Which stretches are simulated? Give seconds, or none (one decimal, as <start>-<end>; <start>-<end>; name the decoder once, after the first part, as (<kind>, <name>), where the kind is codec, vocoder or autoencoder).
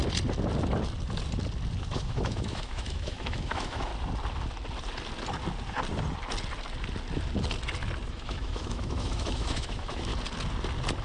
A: 1.8-3.9 (autoencoder, DAC-VAE); 8.1-10.1